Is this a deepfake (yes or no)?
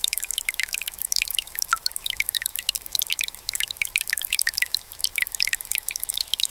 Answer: yes